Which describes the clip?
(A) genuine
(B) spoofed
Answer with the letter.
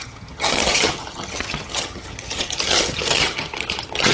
B